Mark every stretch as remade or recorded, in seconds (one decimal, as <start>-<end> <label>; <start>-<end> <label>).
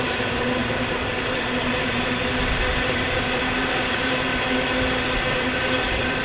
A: 0.0-4.3 remade; 4.3-5.7 recorded; 5.7-6.2 remade